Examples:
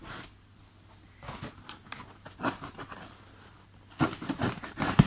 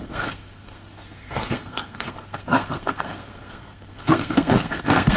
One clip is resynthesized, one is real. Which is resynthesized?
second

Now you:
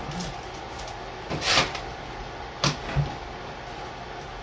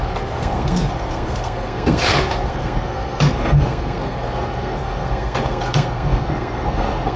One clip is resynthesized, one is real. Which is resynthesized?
second